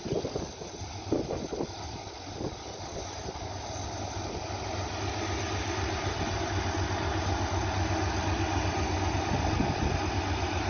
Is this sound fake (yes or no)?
no